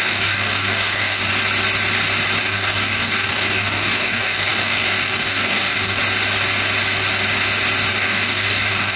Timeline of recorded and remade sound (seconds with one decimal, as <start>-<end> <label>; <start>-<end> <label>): 0.0-1.3 remade; 1.3-2.4 recorded; 2.4-6.0 remade; 6.0-7.9 recorded; 7.9-9.0 remade

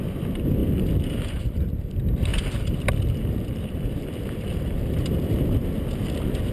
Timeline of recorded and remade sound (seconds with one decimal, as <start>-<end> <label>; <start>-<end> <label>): 0.0-0.6 recorded; 0.6-1.9 remade; 1.9-2.3 recorded; 2.3-6.5 remade

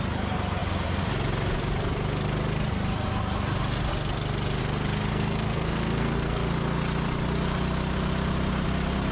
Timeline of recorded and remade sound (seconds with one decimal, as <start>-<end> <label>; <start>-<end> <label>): 0.0-5.1 recorded; 5.1-6.5 remade; 6.5-9.1 recorded

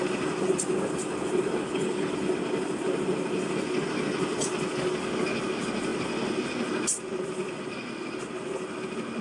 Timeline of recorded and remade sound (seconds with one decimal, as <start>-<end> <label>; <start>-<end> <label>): 0.0-1.6 recorded; 1.6-2.1 remade; 2.1-9.2 recorded

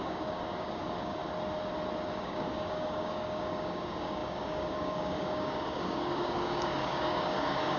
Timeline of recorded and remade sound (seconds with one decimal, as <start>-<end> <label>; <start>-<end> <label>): 0.0-1.2 remade; 1.2-2.1 recorded; 2.1-7.8 remade

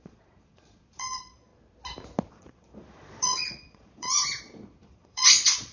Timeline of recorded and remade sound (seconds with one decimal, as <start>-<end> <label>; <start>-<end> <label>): 0.0-1.5 remade; 1.5-2.3 recorded; 2.3-5.7 remade

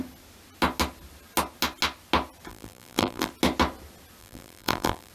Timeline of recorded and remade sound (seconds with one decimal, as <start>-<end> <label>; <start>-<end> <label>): 0.0-2.5 recorded; 2.5-3.3 remade; 3.3-4.2 recorded; 4.2-5.1 remade

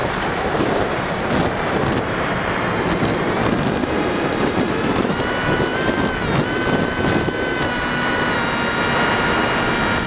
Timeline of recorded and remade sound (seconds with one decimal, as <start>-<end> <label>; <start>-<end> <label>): 0.0-1.1 remade; 1.1-3.8 recorded; 3.8-5.2 remade; 5.2-10.1 recorded